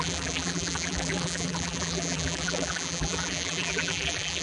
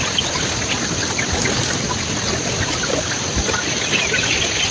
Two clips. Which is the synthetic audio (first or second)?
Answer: first